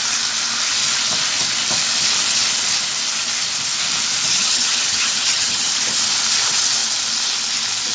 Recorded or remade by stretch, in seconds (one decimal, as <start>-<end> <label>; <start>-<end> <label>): 0.0-4.3 recorded; 4.3-5.7 remade; 5.7-7.9 recorded